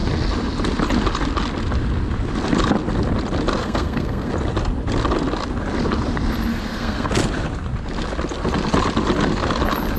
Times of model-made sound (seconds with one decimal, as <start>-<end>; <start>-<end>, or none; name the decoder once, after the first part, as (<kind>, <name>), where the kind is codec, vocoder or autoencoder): 3.6-4.3 (codec, SNAC); 6.5-7.1